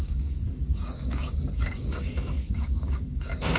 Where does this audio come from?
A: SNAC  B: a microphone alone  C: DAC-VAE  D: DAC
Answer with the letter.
D